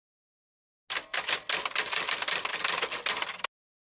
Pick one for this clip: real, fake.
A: real